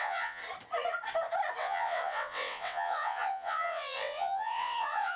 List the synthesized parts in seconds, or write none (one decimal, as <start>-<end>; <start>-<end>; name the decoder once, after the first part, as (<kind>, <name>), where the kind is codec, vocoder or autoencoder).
0.0-0.4 (vocoder, WaveNeXt); 1.6-5.2

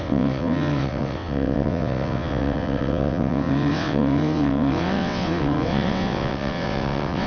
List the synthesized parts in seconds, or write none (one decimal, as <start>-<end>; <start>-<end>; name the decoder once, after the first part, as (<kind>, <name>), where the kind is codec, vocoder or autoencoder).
0.0-7.3 (vocoder, WaveNeXt)

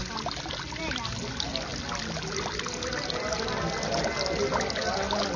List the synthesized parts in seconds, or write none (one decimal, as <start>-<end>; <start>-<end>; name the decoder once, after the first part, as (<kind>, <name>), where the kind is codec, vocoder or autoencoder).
none

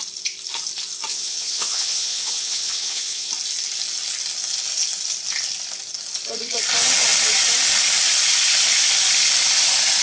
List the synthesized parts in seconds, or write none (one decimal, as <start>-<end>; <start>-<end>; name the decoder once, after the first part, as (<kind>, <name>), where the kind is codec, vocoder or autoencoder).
1.1-3.3 (vocoder, WaveNeXt)

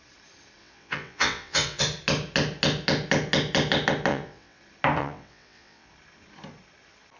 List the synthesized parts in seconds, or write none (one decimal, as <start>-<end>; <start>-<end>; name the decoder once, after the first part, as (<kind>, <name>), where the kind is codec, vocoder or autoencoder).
0.6-1.8 (vocoder, WaveNeXt); 4.1-4.6; 5.0-5.9